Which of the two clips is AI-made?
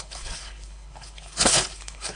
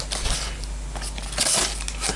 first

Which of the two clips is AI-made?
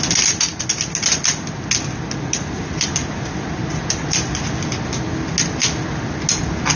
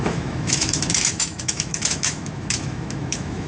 second